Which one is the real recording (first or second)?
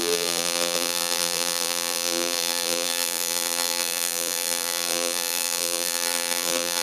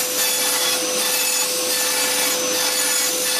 second